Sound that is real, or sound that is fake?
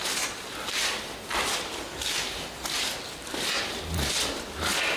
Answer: real